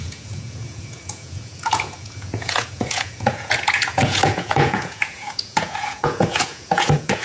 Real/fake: fake